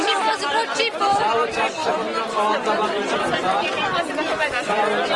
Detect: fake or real real